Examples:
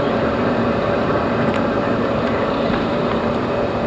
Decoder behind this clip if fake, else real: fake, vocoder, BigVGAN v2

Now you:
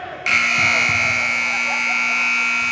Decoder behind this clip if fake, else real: real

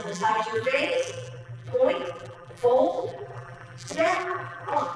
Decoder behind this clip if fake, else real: fake, vocoder, BigVGAN v2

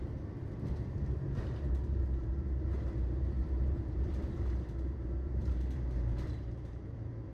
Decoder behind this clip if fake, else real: fake, vocoder, BigVGAN v2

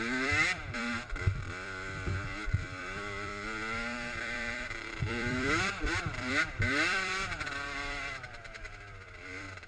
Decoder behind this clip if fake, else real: fake, vocoder, BigVGAN v2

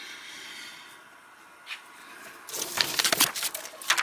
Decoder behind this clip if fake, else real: fake, vocoder, BigVGAN v2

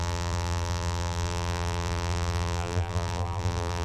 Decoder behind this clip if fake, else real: fake, vocoder, BigVGAN v2